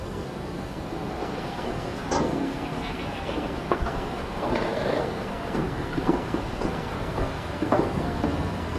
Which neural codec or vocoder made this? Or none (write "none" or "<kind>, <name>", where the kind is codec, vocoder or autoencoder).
codec, SNAC